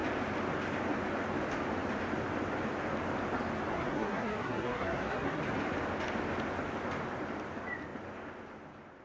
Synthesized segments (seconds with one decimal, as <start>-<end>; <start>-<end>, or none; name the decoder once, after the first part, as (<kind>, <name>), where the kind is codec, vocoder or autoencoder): 3.7-5.4 (codec, SNAC)